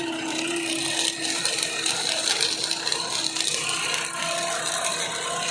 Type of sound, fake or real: real